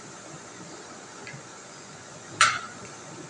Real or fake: fake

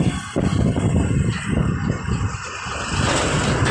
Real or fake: real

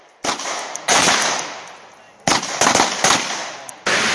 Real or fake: real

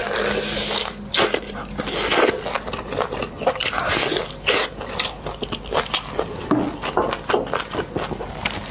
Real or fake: real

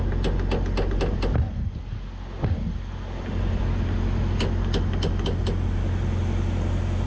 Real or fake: real